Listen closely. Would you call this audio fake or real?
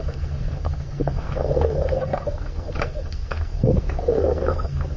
fake